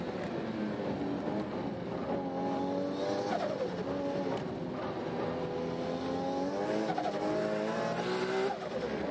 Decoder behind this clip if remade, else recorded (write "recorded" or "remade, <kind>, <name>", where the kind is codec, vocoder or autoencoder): recorded